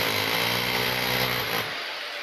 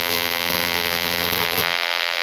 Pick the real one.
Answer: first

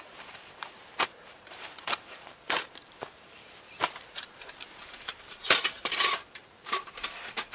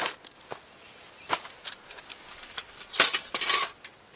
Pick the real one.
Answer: second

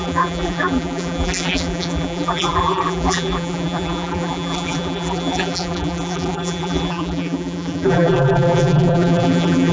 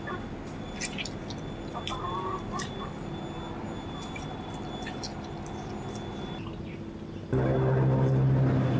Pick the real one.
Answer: second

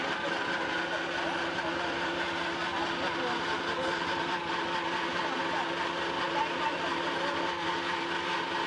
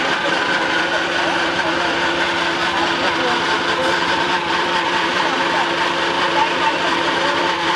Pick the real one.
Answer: first